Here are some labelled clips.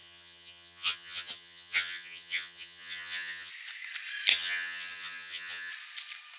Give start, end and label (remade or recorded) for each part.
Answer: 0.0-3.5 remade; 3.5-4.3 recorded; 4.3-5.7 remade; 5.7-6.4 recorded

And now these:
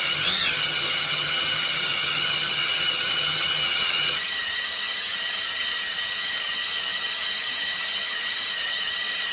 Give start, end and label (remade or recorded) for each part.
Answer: 0.0-9.3 remade

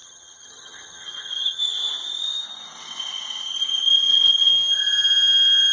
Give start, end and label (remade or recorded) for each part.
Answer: 0.0-1.6 remade; 1.6-3.6 recorded; 3.6-4.5 remade; 4.5-5.7 recorded